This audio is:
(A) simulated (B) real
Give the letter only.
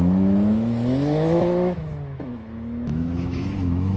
A